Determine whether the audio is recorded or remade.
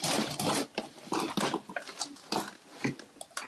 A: recorded